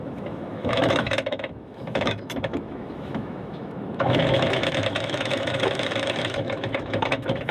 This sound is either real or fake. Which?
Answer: fake